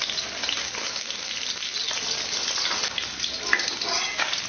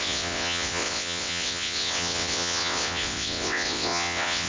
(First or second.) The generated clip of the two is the second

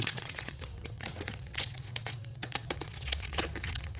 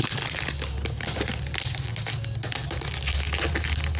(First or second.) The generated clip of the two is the first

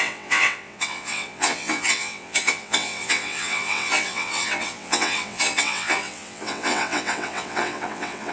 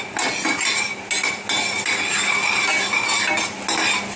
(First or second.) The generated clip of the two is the first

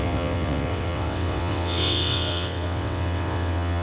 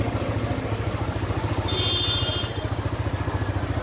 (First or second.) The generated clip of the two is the first